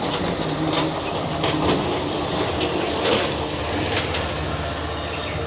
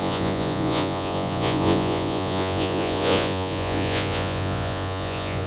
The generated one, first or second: second